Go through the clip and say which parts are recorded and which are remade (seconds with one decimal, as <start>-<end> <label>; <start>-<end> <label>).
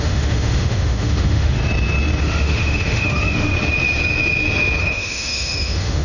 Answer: 0.0-1.6 remade; 1.6-2.2 recorded; 2.2-3.5 remade; 3.5-4.8 recorded; 4.8-6.0 remade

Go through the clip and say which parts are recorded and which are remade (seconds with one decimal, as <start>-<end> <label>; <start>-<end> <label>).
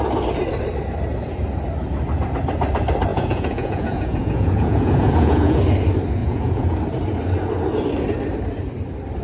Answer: 0.0-3.1 recorded; 3.1-5.6 remade; 5.6-6.2 recorded; 6.2-6.8 remade; 6.8-9.2 recorded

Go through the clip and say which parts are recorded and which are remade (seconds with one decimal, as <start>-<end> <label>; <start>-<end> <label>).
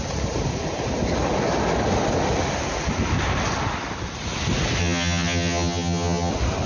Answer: 0.0-4.8 recorded; 4.8-6.3 remade; 6.3-6.7 recorded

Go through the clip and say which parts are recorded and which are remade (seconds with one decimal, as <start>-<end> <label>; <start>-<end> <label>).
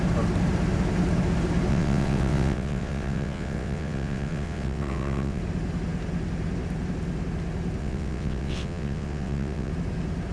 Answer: 0.0-1.7 recorded; 1.7-5.4 remade; 5.4-7.8 recorded; 7.8-9.7 remade; 9.7-10.3 recorded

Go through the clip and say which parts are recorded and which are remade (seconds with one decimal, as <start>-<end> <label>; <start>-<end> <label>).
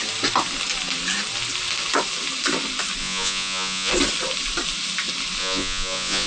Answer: 0.0-3.0 recorded; 3.0-3.9 remade; 3.9-5.4 recorded; 5.4-6.3 remade